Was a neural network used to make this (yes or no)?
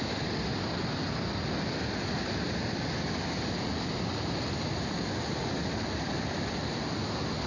no